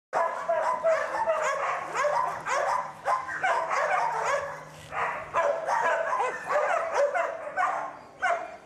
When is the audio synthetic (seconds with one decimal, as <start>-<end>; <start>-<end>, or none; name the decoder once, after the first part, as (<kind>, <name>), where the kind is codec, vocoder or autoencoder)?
2.9-3.7 (autoencoder, DAC-VAE)

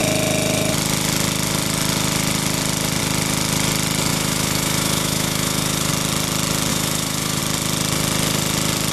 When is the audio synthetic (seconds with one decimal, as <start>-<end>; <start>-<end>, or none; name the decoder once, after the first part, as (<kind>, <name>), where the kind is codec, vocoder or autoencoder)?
4.1-5.9 (autoencoder, DAC-VAE); 6.7-7.4